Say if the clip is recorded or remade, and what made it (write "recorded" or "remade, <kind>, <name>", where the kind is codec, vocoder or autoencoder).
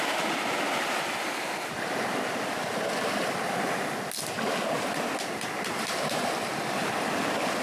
recorded